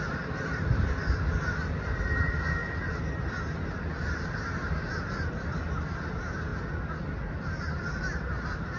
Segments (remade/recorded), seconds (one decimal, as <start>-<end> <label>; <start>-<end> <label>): 0.0-8.8 recorded